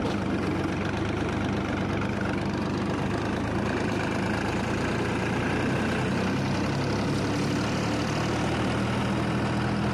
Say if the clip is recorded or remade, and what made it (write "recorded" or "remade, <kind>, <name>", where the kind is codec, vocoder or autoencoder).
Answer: recorded